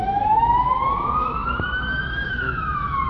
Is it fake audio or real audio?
fake